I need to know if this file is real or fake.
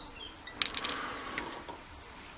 real